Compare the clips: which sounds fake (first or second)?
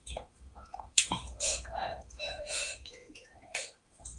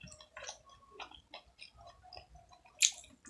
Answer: first